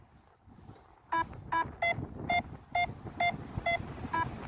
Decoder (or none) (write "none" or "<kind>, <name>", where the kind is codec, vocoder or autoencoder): none